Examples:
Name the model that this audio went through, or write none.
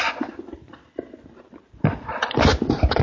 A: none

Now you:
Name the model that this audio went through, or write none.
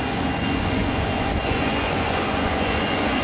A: vocoder, Vocos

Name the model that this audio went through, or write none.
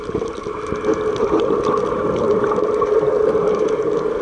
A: vocoder, BigVGAN v2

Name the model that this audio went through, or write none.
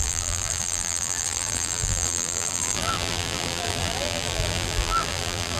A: vocoder, BigVGAN v2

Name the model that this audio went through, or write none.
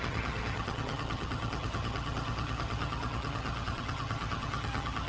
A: vocoder, HiFi-GAN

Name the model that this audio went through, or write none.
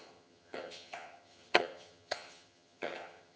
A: vocoder, HiFi-GAN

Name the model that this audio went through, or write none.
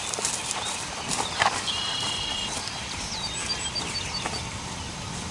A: vocoder, BigVGAN v2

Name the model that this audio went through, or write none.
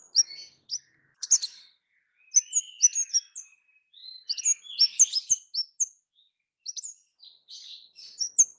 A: none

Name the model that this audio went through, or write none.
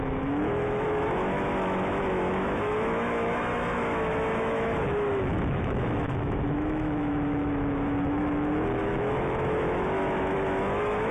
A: autoencoder, DAC-VAE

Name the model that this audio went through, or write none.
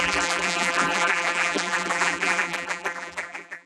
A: vocoder, BigVGAN v2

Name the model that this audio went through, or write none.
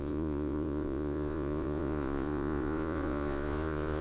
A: vocoder, Vocos